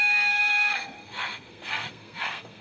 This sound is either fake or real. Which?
fake